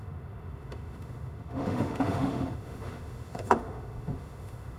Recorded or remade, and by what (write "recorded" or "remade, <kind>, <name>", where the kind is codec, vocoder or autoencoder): remade, autoencoder, DAC-VAE